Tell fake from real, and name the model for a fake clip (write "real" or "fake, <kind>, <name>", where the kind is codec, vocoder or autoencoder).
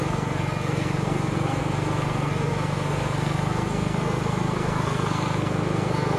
fake, codec, SNAC